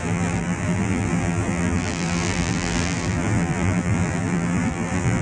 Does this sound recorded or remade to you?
remade